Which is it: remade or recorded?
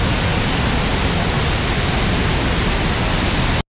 recorded